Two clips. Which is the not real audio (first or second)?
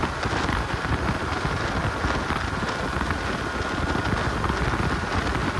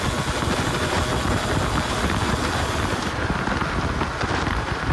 second